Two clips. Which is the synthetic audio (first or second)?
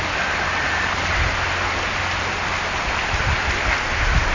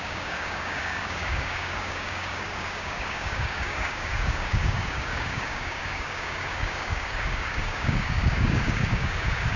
second